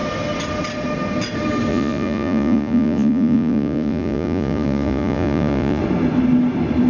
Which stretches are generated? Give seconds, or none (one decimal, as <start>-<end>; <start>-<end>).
1.7-5.8